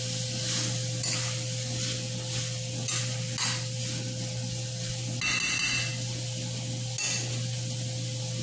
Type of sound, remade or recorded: recorded